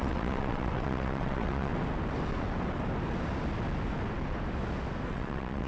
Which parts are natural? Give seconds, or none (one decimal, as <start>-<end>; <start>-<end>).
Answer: 1.7-5.1

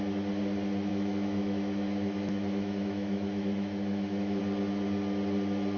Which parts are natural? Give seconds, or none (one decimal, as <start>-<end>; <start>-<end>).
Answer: 0.0-0.9; 4.4-5.8

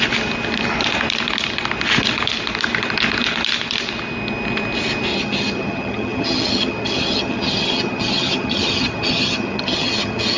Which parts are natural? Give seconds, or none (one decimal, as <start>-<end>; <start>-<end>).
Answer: 0.0-5.1

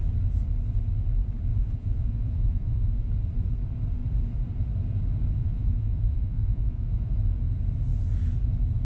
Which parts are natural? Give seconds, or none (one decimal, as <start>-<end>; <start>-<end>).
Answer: 0.0-1.5; 3.1-5.4; 7.1-8.8

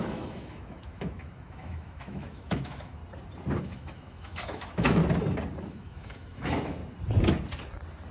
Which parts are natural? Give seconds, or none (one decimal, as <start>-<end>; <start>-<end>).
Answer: 3.0-3.6; 5.0-5.7; 6.8-8.1

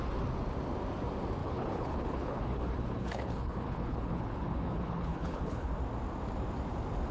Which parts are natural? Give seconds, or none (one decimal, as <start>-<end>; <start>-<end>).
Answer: 0.0-1.4; 5.7-7.1

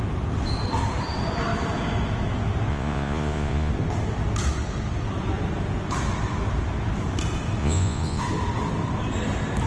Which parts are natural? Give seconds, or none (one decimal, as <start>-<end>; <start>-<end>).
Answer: 0.0-2.7; 3.7-7.6; 8.2-9.7